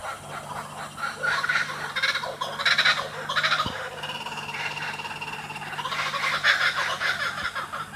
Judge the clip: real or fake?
real